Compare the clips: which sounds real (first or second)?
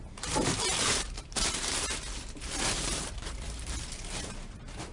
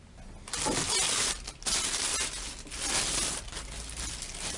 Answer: second